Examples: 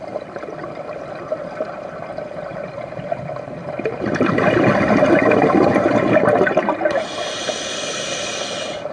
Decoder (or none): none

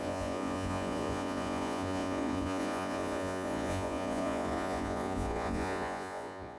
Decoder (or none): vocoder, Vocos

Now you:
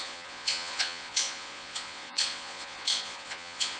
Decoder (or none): vocoder, Vocos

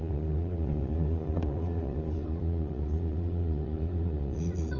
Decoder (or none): vocoder, Vocos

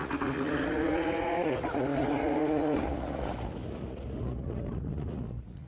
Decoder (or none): vocoder, Vocos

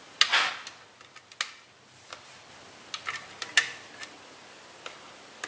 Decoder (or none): none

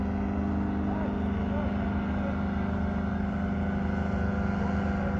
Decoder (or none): none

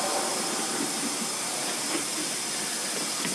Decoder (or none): none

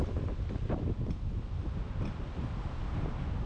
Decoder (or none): none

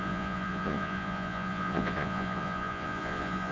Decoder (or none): vocoder, Vocos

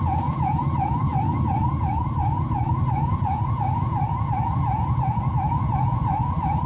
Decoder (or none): vocoder, Vocos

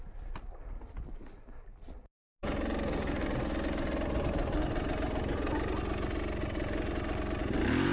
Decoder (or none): none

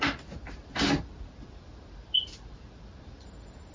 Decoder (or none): none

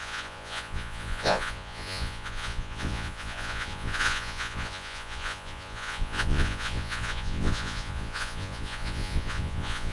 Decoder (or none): vocoder, Vocos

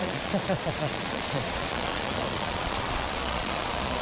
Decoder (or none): vocoder, Vocos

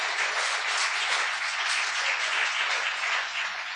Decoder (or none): vocoder, Vocos